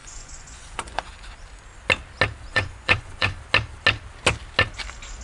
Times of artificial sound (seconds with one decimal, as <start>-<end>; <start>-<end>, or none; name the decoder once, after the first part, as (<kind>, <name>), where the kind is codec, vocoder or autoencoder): 0.0-1.1 (vocoder, Vocos); 2.5-3.4